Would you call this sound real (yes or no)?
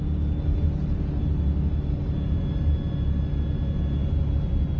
yes